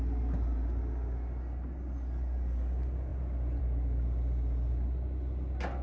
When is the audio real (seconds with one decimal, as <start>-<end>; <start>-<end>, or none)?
0.0-5.8